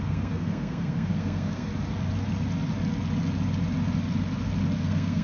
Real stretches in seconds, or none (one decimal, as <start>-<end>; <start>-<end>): 1.7-4.8